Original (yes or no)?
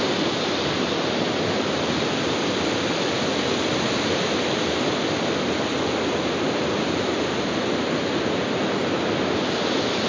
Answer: yes